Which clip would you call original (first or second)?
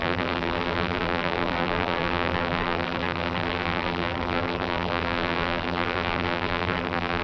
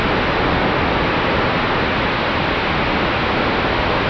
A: second